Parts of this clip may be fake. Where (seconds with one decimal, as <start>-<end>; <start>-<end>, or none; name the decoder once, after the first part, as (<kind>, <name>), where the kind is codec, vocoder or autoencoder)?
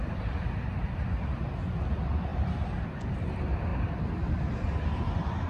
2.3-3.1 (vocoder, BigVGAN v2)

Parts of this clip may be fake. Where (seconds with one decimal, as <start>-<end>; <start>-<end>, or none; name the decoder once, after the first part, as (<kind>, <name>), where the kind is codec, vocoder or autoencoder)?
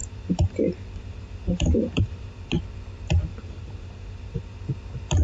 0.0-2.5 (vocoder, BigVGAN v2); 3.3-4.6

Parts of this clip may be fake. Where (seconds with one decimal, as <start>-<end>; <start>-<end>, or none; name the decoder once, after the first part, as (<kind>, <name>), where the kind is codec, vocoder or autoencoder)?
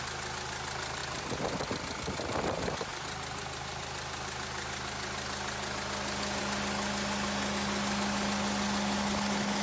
none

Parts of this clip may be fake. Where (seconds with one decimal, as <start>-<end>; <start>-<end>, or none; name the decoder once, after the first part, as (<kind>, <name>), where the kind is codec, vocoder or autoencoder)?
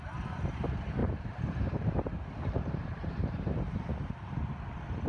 1.0-4.1 (vocoder, BigVGAN v2)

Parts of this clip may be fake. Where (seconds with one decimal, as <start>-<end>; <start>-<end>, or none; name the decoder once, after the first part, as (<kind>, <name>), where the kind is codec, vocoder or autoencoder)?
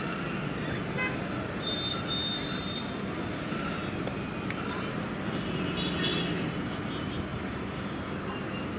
7.3-8.0 (vocoder, BigVGAN v2)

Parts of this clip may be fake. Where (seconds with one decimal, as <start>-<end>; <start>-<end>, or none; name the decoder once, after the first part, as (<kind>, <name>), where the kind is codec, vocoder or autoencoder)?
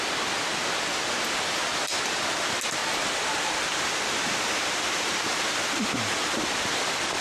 2.8-7.2 (vocoder, BigVGAN v2)